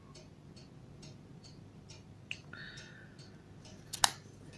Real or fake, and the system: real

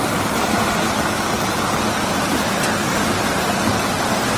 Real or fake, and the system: real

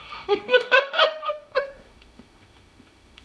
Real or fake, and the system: fake, autoencoder, DAC-VAE